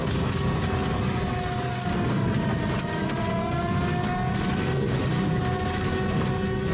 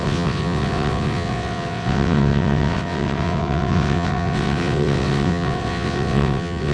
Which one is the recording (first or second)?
first